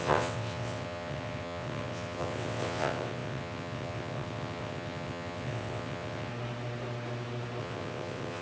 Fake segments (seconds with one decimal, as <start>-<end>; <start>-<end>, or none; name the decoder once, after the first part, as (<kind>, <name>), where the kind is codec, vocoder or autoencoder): 0.0-6.3 (vocoder, WaveNeXt); 7.6-8.4